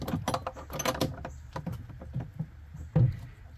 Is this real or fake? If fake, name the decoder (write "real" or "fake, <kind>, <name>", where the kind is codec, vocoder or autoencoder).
real